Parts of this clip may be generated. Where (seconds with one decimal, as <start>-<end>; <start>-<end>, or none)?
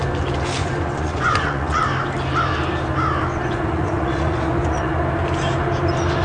0.6-1.8; 3.3-4.9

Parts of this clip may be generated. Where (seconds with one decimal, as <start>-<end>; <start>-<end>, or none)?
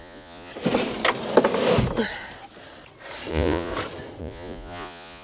0.0-0.5; 3.3-3.7; 4.2-5.2